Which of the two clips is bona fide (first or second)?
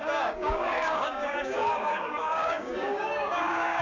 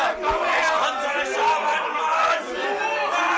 second